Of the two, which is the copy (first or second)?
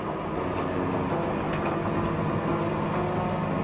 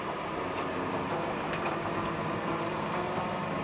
second